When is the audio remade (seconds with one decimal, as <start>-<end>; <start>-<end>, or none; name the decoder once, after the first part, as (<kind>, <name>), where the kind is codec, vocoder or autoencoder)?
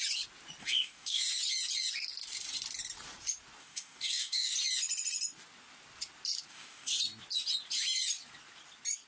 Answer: 0.6-1.2 (codec, DAC); 3.6-4.5; 6.5-7.0